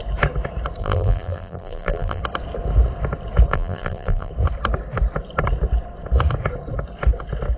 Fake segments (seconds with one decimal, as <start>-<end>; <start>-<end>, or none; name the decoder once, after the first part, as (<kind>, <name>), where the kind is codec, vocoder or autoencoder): 0.8-2.2 (vocoder, BigVGAN v2); 3.5-4.3